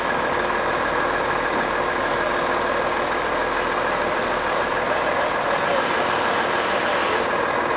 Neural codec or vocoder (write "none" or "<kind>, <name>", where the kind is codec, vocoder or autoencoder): none